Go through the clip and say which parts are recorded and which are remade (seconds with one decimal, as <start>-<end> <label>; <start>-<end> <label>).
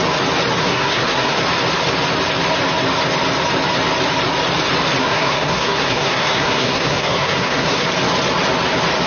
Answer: 0.0-0.6 recorded; 0.6-1.4 remade; 1.4-5.0 recorded; 5.0-7.9 remade; 7.9-9.1 recorded